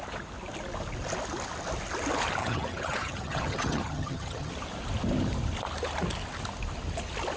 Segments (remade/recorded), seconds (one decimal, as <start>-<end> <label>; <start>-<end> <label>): 0.0-2.4 recorded; 2.4-4.5 remade; 4.5-7.4 recorded